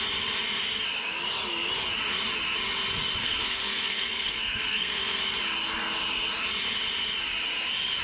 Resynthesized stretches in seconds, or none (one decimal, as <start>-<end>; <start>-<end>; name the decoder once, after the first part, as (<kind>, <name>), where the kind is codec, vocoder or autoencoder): 3.2-5.2 (codec, SNAC)